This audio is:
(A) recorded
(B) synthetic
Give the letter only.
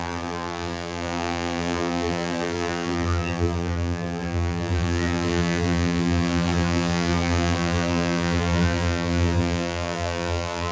B